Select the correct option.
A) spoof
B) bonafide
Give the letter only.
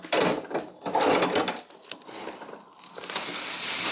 B